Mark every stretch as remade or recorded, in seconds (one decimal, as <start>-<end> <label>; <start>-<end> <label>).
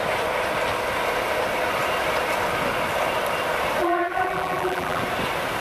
0.0-3.8 recorded; 3.8-5.0 remade; 5.0-5.6 recorded